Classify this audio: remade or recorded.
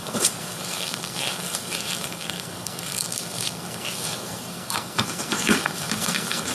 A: remade